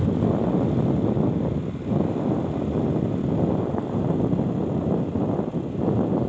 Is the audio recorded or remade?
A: recorded